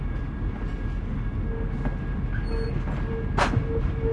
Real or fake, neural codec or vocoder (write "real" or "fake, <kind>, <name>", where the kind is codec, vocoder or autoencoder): real